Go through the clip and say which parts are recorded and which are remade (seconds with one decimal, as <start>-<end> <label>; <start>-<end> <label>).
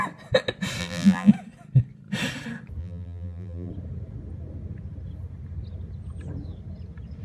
0.0-0.8 recorded; 0.8-1.3 remade; 1.3-2.8 recorded; 2.8-3.7 remade; 3.7-7.2 recorded